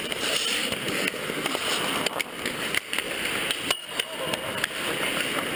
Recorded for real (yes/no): yes